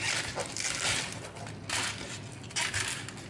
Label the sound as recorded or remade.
recorded